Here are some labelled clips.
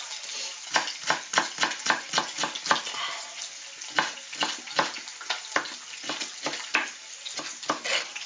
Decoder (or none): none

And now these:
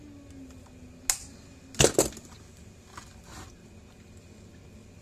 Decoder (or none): none